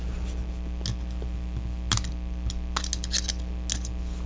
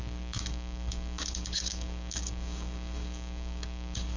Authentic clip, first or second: first